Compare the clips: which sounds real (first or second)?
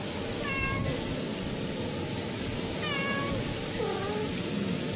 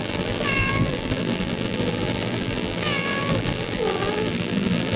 first